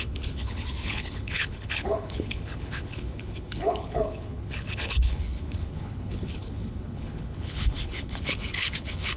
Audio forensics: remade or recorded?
remade